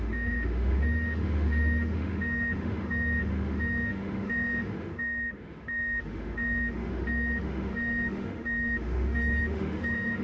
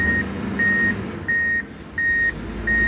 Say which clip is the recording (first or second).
second